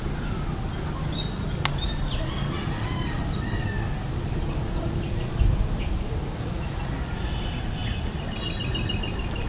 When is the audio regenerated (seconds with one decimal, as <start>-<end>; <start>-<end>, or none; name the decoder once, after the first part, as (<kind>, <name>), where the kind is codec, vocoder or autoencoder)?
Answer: none